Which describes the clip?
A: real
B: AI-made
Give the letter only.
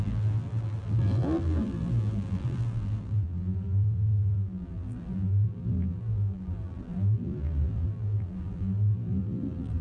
B